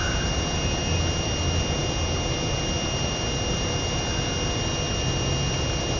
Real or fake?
real